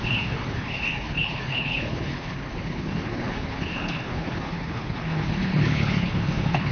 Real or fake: fake